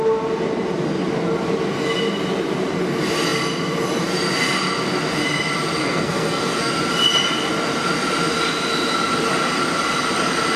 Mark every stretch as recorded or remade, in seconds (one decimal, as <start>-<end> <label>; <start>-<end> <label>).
0.0-5.8 recorded; 5.8-6.7 remade; 6.7-10.6 recorded